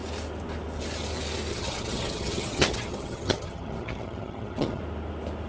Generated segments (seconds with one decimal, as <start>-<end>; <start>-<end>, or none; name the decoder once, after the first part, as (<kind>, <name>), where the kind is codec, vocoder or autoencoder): 1.5-4.8 (vocoder, HiFi-GAN)